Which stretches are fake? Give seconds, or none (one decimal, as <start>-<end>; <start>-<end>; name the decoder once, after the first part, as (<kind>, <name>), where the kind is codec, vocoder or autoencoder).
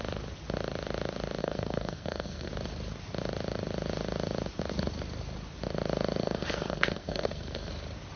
1.4-2.5 (codec, SNAC); 6.2-7.7